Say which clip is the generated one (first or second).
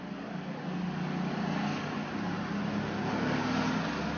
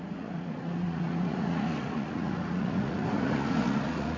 second